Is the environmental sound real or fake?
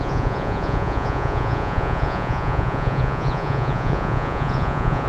fake